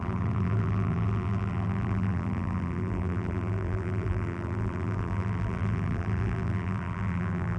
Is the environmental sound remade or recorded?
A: remade